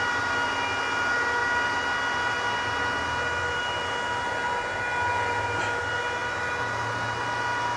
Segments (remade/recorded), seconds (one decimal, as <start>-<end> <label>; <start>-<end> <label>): 0.0-7.8 recorded